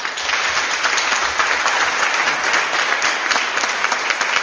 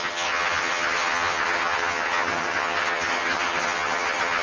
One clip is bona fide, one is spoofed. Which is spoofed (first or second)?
second